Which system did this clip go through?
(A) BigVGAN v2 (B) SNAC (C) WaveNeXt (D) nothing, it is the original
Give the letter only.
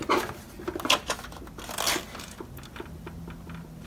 D